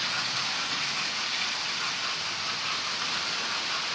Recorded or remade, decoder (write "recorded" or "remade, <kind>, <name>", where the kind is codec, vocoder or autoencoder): recorded